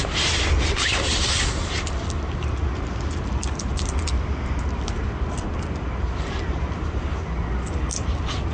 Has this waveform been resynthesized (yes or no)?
no